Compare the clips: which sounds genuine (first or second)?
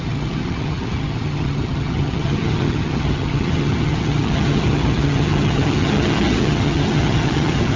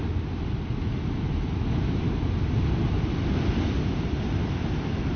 second